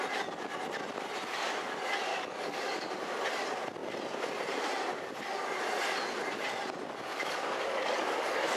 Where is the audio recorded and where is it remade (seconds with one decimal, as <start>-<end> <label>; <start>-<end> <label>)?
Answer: 0.0-2.1 recorded; 2.1-2.9 remade; 2.9-7.1 recorded; 7.1-8.6 remade